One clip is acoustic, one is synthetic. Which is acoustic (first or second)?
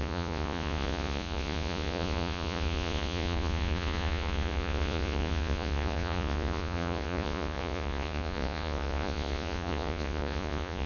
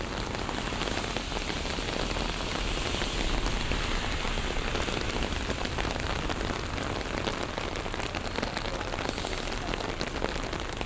second